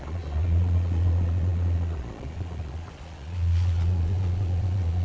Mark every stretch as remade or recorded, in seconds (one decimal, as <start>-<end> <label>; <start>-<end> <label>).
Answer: 0.0-5.0 remade